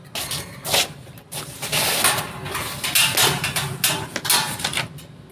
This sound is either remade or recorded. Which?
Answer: recorded